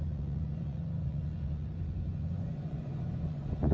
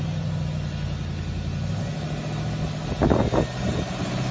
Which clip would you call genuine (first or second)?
second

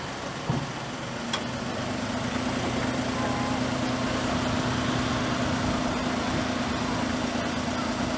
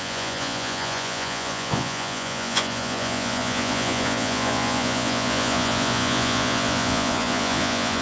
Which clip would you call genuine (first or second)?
first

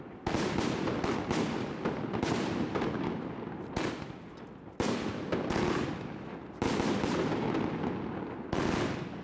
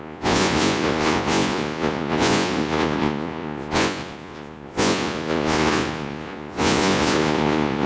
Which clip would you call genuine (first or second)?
first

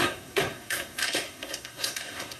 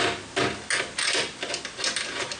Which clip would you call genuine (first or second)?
second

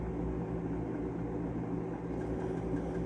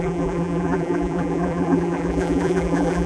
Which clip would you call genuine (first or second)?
first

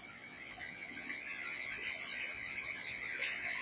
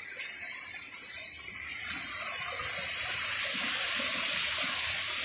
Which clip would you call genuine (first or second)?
second